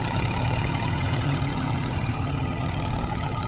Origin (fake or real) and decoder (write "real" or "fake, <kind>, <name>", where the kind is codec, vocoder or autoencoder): fake, vocoder, HiFi-GAN